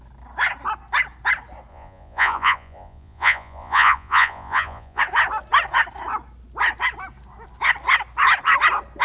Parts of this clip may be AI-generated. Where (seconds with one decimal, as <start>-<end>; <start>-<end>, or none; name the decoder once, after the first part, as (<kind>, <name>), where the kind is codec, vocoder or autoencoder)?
1.7-5.0 (vocoder, Vocos)